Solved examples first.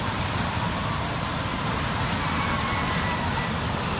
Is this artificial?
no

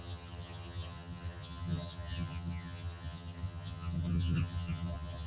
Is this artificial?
yes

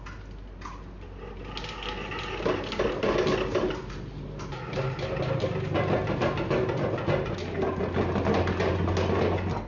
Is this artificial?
no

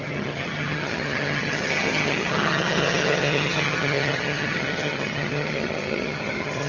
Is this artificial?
yes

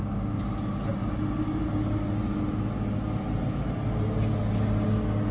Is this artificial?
no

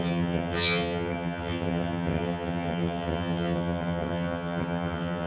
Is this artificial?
yes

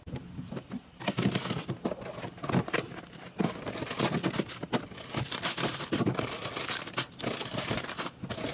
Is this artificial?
no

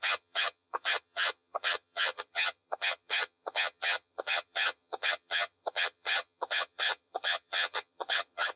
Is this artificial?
yes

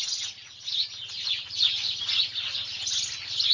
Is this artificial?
no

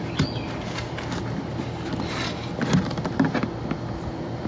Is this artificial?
no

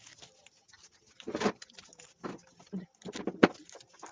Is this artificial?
no